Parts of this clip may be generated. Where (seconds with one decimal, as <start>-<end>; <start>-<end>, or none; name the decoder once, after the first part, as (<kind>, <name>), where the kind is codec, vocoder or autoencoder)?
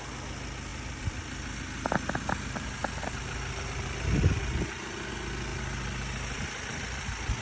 none